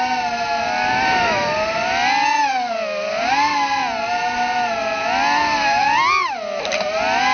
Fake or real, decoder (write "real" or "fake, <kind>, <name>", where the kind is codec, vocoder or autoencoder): real